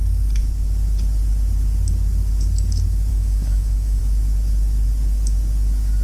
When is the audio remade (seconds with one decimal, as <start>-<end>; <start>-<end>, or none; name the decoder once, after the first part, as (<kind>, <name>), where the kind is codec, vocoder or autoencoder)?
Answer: 3.1-4.0 (autoencoder, DAC-VAE)